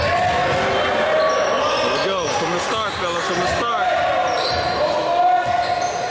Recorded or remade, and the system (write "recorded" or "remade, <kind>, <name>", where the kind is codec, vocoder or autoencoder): recorded